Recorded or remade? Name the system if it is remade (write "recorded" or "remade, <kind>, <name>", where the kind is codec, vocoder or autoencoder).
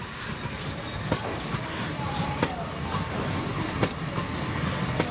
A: recorded